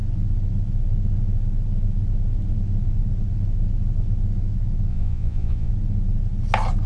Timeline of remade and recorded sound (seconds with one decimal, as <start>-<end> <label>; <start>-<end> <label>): 0.0-4.9 recorded; 4.9-5.7 remade; 5.7-6.9 recorded